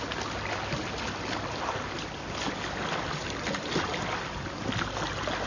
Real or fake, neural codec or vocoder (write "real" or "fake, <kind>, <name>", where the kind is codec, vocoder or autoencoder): real